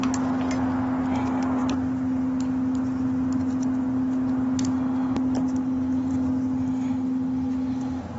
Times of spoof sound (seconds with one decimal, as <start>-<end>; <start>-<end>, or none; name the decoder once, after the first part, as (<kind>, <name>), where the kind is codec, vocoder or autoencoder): none